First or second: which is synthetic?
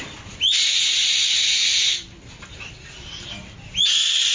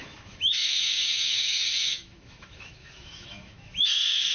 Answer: second